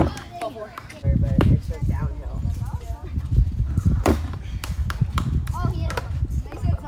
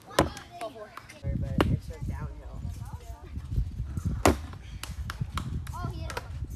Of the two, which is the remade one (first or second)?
first